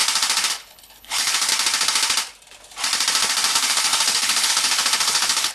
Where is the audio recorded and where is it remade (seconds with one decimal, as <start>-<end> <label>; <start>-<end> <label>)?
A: 0.0-0.5 recorded; 0.5-1.5 remade; 1.5-3.5 recorded; 3.5-5.5 remade